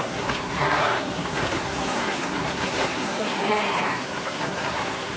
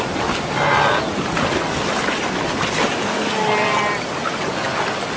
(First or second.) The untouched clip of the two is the second